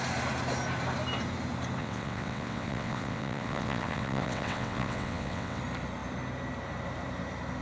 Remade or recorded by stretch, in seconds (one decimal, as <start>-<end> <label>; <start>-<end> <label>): 0.0-1.8 recorded; 1.8-5.6 remade; 5.6-7.6 recorded